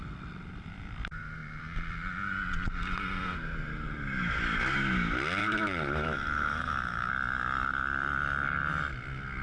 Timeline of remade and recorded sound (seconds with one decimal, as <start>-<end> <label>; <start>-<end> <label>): 0.0-5.4 recorded; 5.4-7.1 remade; 7.1-9.4 recorded